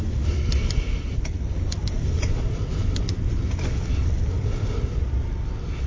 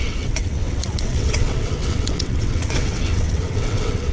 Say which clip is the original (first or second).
first